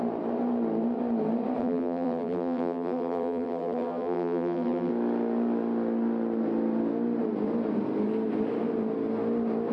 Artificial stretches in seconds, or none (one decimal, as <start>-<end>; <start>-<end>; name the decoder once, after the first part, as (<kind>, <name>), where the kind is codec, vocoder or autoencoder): 1.6-4.9 (vocoder, BigVGAN v2)